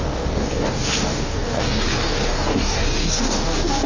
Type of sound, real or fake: fake